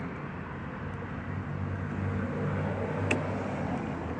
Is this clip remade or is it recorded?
recorded